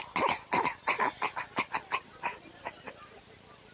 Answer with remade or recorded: recorded